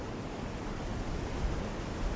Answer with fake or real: fake